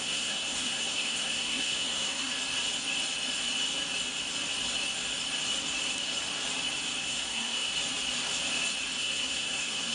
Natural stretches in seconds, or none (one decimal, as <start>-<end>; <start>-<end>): 2.3-7.0; 7.7-9.0